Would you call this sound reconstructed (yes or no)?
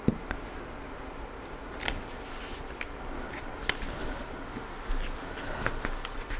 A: no